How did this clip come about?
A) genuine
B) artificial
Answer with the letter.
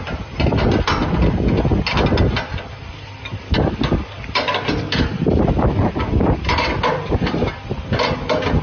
A